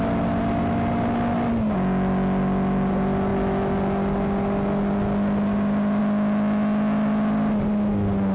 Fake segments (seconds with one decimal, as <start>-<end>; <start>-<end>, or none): none